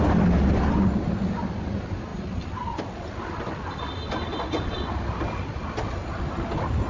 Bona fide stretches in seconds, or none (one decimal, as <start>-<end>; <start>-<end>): 0.0-6.9